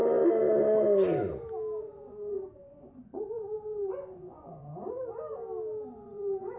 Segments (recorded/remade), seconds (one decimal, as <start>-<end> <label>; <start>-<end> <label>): 0.0-1.8 recorded; 1.8-4.7 remade; 4.7-5.9 recorded; 5.9-6.6 remade